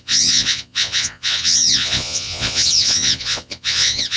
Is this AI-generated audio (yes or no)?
yes